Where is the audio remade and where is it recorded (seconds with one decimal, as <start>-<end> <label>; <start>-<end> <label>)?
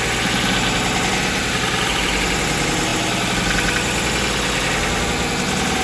0.0-5.8 recorded